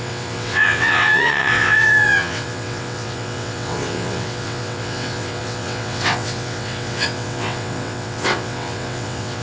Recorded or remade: remade